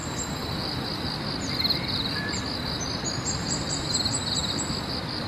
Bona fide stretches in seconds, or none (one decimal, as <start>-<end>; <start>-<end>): 2.4-3.4; 4.0-4.4